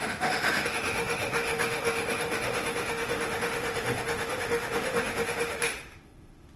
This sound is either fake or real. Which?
fake